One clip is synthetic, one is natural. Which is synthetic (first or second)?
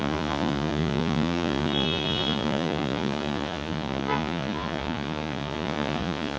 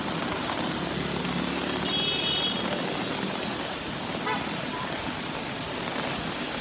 first